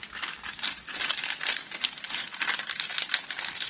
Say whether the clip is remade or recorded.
recorded